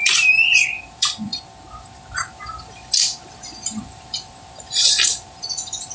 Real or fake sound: fake